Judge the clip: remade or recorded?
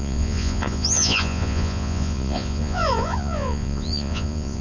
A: remade